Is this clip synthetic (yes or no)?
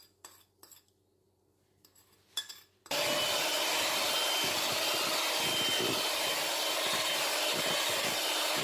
no